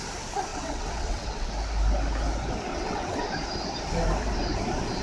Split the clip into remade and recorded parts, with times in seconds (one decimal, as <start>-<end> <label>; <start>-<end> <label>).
0.0-0.5 recorded; 0.5-1.5 remade; 1.5-2.7 recorded; 2.7-3.2 remade; 3.2-5.0 recorded